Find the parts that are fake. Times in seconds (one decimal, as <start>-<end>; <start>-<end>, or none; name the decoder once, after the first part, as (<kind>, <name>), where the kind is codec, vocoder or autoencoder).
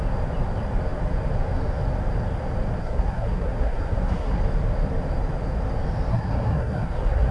2.8-4.4 (codec, SNAC); 6.1-7.3